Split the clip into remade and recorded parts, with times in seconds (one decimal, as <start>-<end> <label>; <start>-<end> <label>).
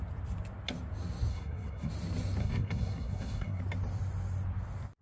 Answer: 0.0-1.3 recorded; 1.3-1.9 remade; 1.9-2.4 recorded; 2.4-3.6 remade; 3.6-5.0 recorded